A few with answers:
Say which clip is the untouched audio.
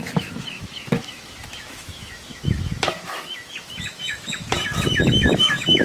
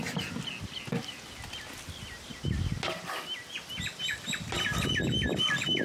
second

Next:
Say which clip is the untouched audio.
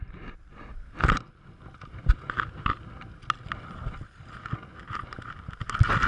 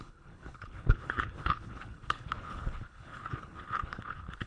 first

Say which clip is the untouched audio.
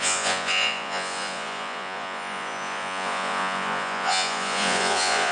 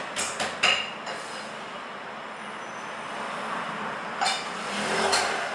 second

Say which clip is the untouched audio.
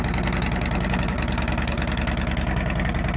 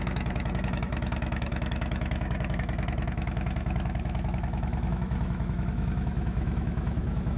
first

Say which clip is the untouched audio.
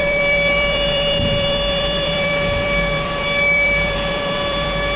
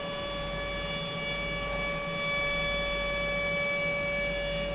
second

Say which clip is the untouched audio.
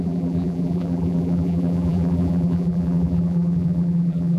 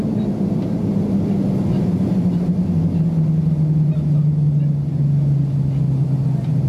second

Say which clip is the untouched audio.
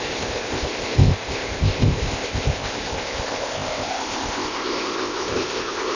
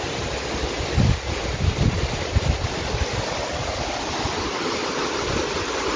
second